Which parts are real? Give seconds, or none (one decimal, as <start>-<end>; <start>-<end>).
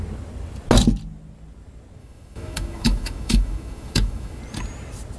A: 0.0-2.0; 4.4-5.2